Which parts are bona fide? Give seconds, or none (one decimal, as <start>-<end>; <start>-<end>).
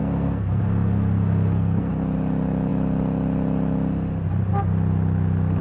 1.9-5.6